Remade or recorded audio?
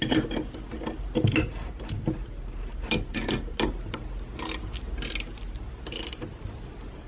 recorded